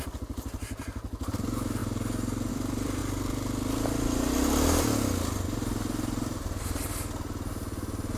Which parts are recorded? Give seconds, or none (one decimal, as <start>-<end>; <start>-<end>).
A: 1.8-2.5; 3.0-8.2